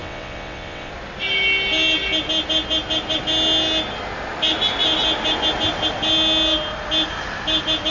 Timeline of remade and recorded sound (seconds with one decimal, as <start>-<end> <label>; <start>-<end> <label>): 0.0-0.9 remade; 0.9-7.9 recorded